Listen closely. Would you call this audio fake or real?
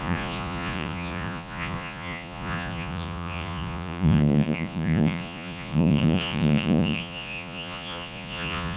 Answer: fake